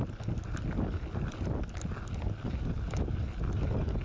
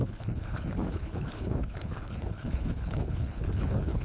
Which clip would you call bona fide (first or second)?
first